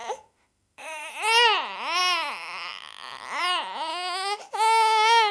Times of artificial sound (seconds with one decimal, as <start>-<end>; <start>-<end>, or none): 0.0-1.1; 3.9-5.3